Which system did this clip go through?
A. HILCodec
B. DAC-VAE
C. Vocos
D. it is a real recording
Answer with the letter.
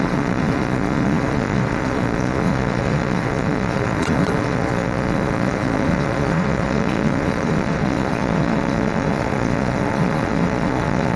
C